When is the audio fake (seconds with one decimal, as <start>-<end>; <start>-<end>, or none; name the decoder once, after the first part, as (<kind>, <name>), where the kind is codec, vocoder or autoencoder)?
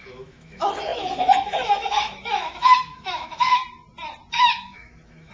0.0-3.6 (autoencoder, DAC-VAE); 4.3-5.3